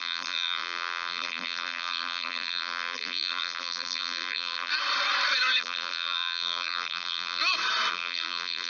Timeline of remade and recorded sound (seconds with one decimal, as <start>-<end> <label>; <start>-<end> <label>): 0.0-4.7 remade; 4.7-5.6 recorded; 5.6-7.4 remade; 7.4-7.9 recorded; 7.9-8.7 remade